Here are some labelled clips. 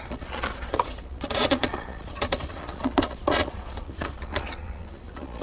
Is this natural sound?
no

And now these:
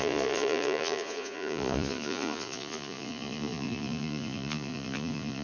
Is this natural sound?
no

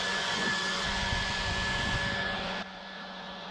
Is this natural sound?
no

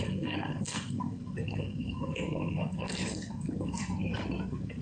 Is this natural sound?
no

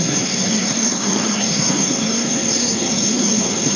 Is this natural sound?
no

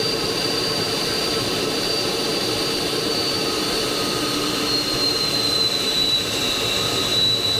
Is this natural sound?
no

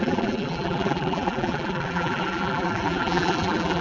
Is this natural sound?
no